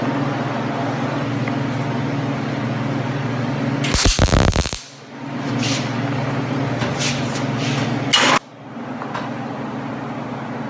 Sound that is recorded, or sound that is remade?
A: recorded